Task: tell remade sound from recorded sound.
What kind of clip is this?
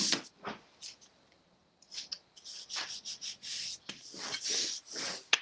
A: recorded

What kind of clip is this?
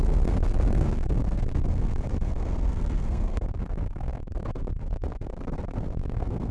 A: remade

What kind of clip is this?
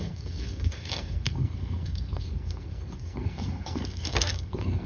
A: remade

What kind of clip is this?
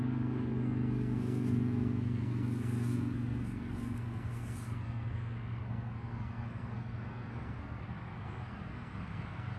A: remade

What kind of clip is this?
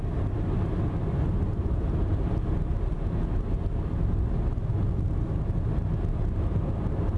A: recorded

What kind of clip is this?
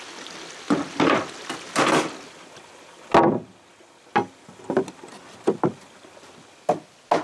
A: recorded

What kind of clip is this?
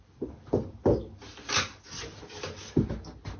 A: recorded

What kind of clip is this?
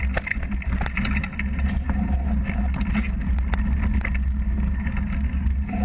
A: recorded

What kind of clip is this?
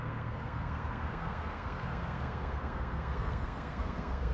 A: remade